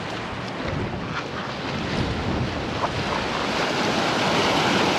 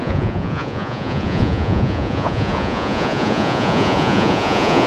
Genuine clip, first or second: first